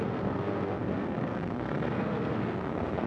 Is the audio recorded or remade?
remade